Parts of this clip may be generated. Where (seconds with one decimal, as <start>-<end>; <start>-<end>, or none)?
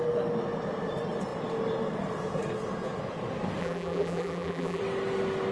3.6-4.8